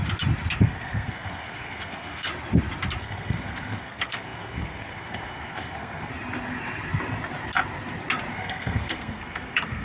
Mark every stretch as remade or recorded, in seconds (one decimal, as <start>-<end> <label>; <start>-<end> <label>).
0.0-0.6 recorded; 0.6-2.3 remade; 2.3-3.0 recorded; 3.0-6.1 remade; 6.1-8.3 recorded; 8.3-9.8 remade